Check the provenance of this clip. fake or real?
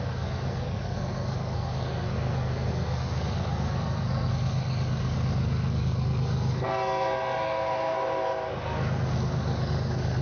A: fake